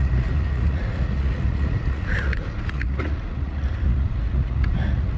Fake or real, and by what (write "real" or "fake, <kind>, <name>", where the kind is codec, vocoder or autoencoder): fake, vocoder, Vocos